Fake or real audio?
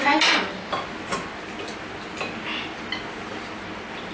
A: real